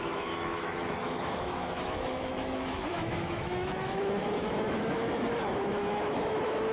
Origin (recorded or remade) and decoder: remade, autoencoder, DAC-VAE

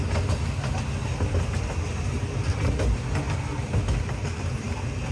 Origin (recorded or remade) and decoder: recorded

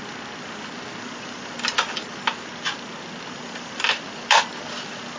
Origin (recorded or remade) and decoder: recorded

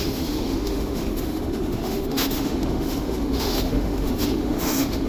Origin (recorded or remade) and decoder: remade, autoencoder, DAC-VAE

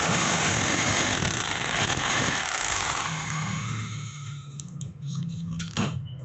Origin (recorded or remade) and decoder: remade, autoencoder, DAC-VAE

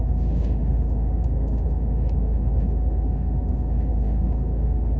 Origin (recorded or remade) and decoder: remade, autoencoder, DAC-VAE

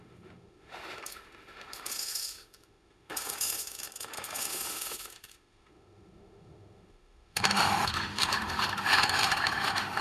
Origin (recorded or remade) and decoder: remade, autoencoder, DAC-VAE